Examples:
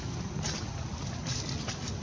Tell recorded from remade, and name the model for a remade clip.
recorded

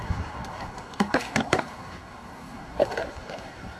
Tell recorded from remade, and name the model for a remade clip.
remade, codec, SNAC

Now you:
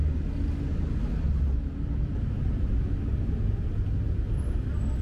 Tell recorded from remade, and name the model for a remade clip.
recorded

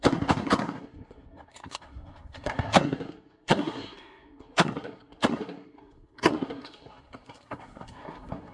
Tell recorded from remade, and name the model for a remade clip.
remade, codec, SNAC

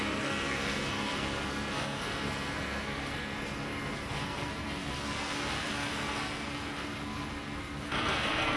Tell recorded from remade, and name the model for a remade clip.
remade, codec, SNAC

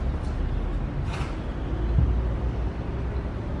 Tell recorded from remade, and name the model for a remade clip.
recorded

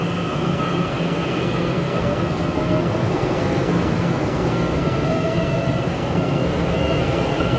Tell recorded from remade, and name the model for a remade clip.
remade, codec, SNAC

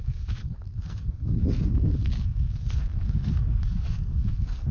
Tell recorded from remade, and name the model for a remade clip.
remade, codec, SNAC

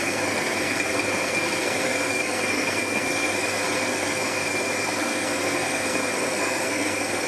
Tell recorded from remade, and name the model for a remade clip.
remade, codec, SNAC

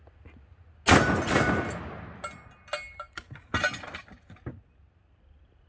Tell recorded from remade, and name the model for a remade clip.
recorded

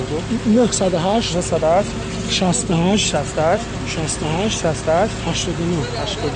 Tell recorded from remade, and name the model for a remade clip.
recorded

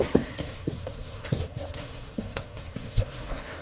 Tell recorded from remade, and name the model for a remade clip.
remade, codec, SNAC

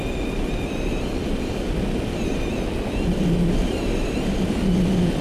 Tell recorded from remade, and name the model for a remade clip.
recorded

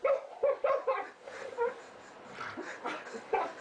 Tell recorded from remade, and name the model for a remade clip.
recorded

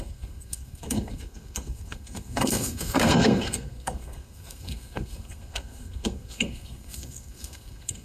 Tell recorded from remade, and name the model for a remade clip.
remade, codec, SNAC